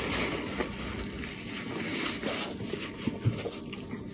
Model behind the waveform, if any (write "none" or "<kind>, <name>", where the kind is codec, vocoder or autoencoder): none